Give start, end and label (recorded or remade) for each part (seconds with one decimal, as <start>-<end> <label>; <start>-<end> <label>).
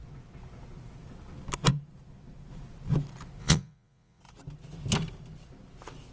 0.0-3.4 recorded; 3.4-4.2 remade; 4.2-6.1 recorded